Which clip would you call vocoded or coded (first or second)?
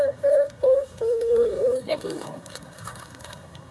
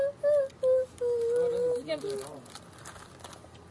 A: first